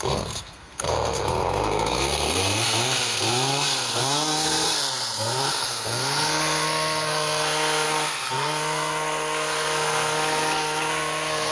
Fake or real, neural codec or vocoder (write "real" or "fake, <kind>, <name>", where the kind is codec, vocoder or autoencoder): fake, codec, SNAC